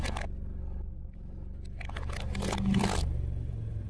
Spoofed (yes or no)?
no